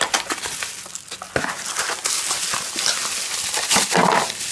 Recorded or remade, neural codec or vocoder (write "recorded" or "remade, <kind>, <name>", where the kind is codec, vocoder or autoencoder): recorded